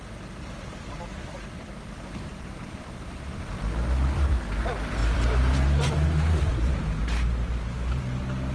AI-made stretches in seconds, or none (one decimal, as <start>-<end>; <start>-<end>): 2.3-3.1; 5.0-8.0